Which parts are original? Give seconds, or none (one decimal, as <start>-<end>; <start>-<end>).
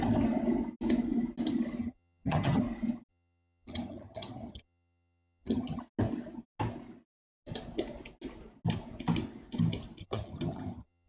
0.0-1.8; 2.6-3.1; 5.8-10.0